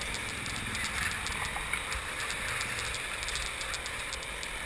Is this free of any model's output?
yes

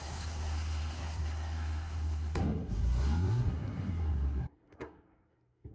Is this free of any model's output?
no